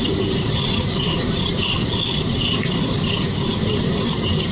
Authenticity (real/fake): real